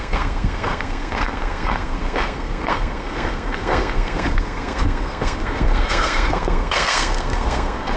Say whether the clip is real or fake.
fake